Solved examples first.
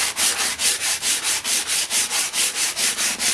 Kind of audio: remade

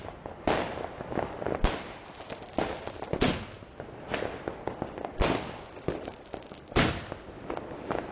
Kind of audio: recorded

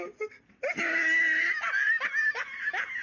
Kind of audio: recorded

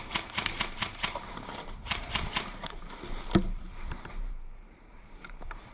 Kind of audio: remade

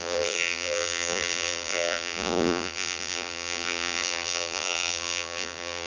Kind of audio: remade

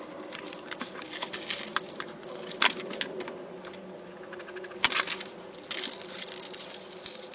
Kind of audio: recorded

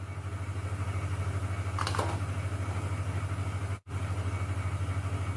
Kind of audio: recorded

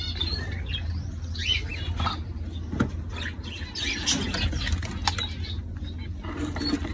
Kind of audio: recorded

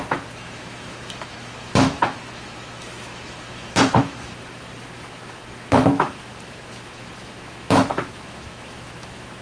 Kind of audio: remade